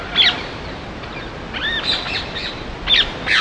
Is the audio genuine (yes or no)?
yes